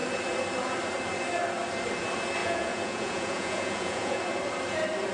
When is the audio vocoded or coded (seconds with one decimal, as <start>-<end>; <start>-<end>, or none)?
2.4-4.2

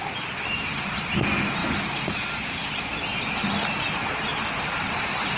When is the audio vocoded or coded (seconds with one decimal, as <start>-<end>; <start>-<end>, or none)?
none

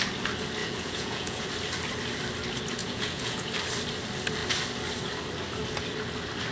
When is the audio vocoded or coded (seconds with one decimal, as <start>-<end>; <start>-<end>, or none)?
0.6-1.5; 2.8-3.5

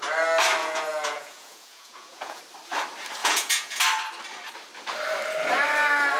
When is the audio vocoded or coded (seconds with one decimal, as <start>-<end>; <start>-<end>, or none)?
0.6-2.4; 3.2-3.8

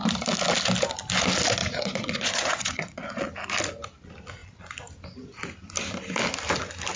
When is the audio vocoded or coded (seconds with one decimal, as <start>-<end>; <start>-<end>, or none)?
1.6-3.3

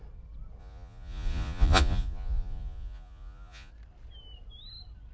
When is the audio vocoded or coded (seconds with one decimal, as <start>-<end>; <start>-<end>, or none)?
0.6-3.7

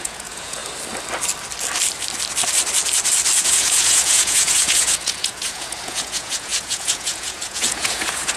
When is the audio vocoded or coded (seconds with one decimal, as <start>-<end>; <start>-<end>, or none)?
0.0-0.6; 3.4-8.4

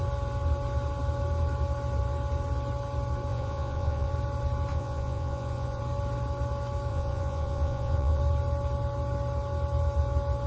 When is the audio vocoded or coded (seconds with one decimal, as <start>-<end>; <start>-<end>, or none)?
3.3-4.1; 4.7-5.8; 6.9-8.2